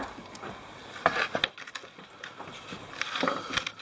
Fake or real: real